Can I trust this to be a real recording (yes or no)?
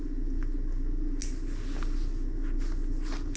yes